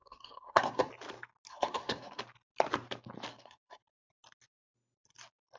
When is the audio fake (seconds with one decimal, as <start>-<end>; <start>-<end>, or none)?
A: 0.0-0.9; 1.5-2.2; 3.3-3.8